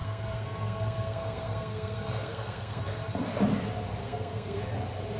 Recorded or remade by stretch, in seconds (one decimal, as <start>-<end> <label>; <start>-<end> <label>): 0.0-2.8 remade; 2.8-4.0 recorded; 4.0-4.6 remade; 4.6-5.2 recorded